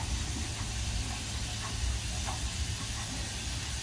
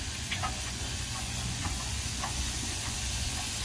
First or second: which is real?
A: first